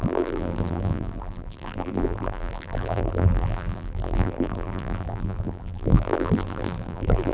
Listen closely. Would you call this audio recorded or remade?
remade